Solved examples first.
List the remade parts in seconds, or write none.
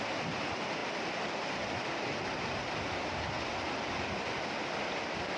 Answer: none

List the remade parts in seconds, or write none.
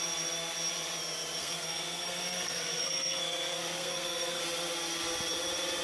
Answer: 1.4-4.4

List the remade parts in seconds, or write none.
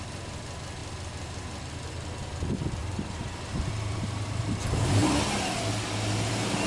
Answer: 2.8-4.5